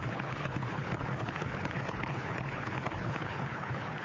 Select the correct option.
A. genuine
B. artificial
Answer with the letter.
B